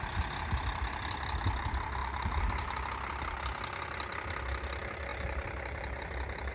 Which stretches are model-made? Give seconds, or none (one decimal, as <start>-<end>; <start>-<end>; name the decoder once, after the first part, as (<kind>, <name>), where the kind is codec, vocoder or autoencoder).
2.0-2.8 (vocoder, BigVGAN v2); 5.1-6.5

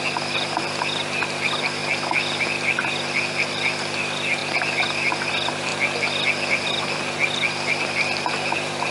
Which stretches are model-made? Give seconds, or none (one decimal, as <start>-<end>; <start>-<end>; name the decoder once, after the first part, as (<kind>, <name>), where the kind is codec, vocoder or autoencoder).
0.0-1.8 (vocoder, BigVGAN v2); 2.4-5.7; 6.5-8.9

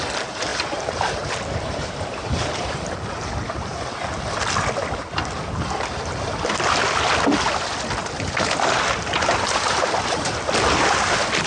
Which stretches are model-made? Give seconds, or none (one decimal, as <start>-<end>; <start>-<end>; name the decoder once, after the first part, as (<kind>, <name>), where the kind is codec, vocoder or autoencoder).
0.5-3.3 (vocoder, BigVGAN v2); 8.0-9.9

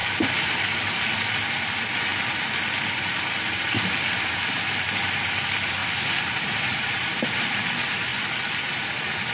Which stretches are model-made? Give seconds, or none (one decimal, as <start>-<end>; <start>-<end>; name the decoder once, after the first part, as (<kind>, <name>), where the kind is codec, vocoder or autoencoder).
0.0-5.8 (vocoder, BigVGAN v2); 6.4-8.1

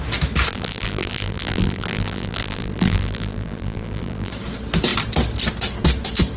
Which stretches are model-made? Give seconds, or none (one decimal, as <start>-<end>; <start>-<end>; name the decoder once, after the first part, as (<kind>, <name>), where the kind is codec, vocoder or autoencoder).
0.5-4.3 (vocoder, BigVGAN v2)

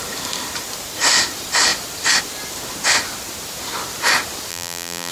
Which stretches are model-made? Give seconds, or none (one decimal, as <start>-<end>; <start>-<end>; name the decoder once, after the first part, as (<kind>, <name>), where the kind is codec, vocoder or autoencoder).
4.5-5.1 (vocoder, BigVGAN v2)

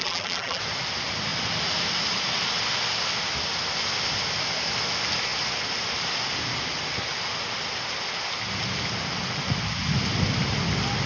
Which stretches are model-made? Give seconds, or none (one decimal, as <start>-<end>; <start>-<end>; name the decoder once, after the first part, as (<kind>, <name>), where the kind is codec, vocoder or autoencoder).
0.0-0.6 (vocoder, BigVGAN v2)